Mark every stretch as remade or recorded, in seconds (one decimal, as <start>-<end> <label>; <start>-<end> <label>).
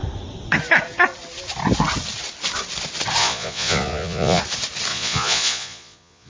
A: 0.0-3.2 recorded; 3.2-4.4 remade; 4.4-4.9 recorded; 4.9-6.3 remade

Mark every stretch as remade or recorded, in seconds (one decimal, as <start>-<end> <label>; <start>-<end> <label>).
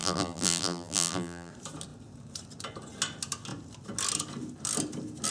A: 0.0-1.5 remade; 1.5-5.3 recorded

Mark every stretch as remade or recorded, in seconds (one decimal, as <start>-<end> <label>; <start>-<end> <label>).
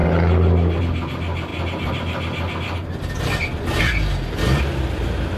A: 0.0-5.4 recorded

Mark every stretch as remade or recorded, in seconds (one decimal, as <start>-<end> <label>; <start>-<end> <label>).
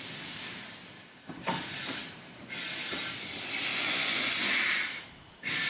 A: 0.0-3.7 recorded; 3.7-4.5 remade; 4.5-5.7 recorded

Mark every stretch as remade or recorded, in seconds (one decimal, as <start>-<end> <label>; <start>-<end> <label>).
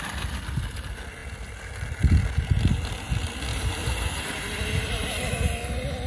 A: 0.0-3.5 recorded; 3.5-5.3 remade; 5.3-6.1 recorded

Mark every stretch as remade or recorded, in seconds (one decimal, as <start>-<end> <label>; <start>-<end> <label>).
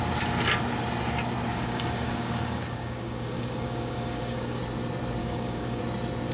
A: 0.0-1.5 recorded; 1.5-4.6 remade; 4.6-5.2 recorded; 5.2-5.8 remade; 5.8-6.3 recorded